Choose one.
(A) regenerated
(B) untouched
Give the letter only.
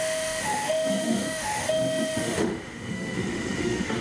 A